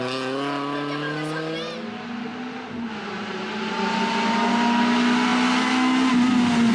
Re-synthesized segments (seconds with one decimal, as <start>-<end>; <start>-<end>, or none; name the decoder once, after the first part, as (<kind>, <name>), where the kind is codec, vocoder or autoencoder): none